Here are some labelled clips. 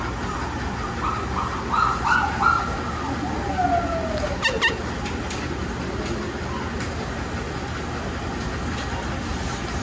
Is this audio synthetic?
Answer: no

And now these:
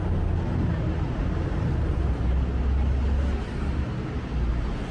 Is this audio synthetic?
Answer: no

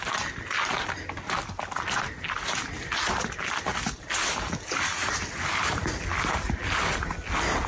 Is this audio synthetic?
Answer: no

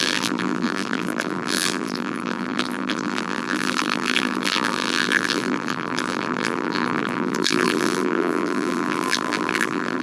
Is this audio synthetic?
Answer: yes